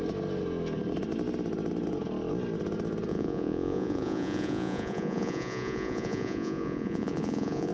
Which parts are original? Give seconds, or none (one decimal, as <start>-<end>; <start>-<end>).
0.0-3.1